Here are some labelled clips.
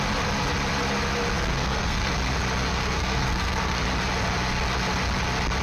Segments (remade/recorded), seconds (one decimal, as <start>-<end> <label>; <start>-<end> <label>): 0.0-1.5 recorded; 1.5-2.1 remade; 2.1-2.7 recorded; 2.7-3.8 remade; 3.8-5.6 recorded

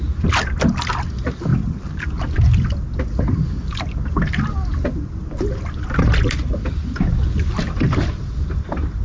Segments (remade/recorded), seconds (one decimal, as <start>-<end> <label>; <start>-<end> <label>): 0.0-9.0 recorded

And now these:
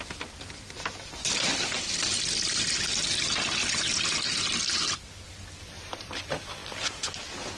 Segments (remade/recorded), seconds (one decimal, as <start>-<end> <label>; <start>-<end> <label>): 0.0-7.6 recorded

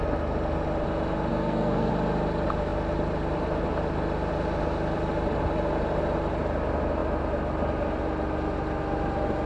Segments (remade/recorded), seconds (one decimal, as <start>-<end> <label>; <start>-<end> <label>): 0.0-1.3 recorded; 1.3-1.9 remade; 1.9-9.5 recorded